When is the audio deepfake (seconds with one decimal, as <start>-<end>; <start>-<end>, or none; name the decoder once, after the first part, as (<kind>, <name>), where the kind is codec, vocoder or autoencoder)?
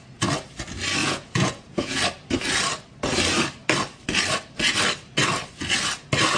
1.0-2.0 (vocoder, Vocos)